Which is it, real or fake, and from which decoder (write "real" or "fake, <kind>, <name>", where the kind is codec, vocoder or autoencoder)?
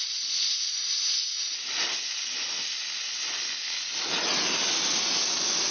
real